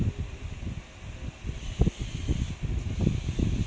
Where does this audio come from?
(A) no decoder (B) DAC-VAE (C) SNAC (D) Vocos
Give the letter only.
A